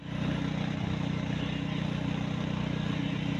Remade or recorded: recorded